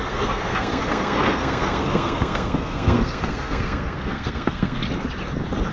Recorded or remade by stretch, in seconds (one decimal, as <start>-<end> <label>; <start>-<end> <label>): 0.0-4.8 remade; 4.8-5.7 recorded